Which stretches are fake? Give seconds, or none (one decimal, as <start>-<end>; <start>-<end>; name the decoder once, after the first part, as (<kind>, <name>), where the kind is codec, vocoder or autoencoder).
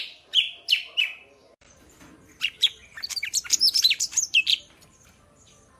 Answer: 1.4-4.9 (vocoder, BigVGAN v2)